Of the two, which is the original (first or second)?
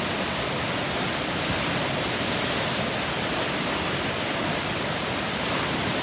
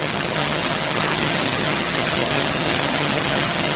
first